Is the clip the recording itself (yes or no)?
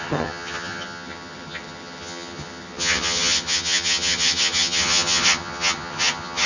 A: no